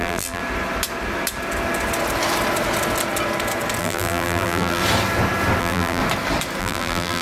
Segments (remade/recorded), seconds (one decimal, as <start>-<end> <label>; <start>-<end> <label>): 0.0-0.4 remade; 0.4-3.8 recorded; 3.8-4.8 remade; 4.8-5.6 recorded; 5.6-6.0 remade; 6.0-6.6 recorded; 6.6-7.2 remade